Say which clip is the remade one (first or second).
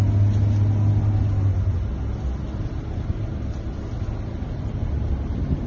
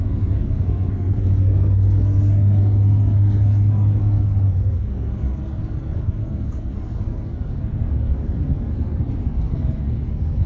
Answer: second